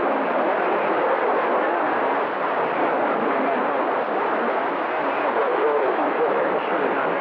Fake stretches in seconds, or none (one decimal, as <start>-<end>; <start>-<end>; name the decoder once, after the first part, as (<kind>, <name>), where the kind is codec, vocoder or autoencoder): 5.5-6.5 (autoencoder, DAC-VAE)